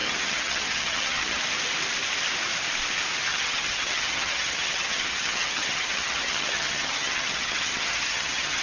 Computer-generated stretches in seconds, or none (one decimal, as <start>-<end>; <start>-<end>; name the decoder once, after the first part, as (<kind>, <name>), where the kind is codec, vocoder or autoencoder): 0.0-1.4 (vocoder, HiFi-GAN); 3.3-8.6